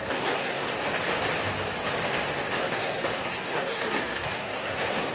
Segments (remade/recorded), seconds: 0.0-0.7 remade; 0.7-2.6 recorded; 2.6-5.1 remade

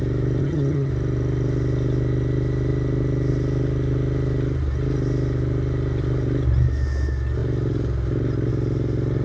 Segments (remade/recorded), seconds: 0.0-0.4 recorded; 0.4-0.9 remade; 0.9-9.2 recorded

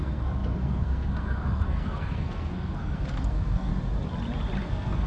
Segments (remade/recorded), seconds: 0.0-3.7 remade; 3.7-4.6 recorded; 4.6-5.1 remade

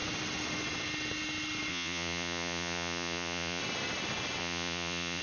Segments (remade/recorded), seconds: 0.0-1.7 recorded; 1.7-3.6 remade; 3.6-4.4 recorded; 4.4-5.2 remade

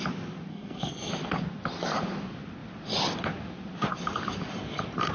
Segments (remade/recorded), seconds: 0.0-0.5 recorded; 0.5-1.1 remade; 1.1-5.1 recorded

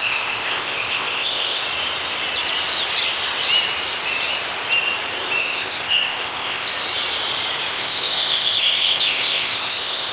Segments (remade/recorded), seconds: 0.0-1.6 remade; 1.6-5.4 recorded; 5.4-6.7 remade; 6.7-7.7 recorded; 7.7-10.1 remade

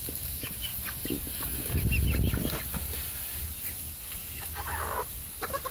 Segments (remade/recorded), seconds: 0.0-0.7 remade; 0.7-3.8 recorded; 3.8-5.7 remade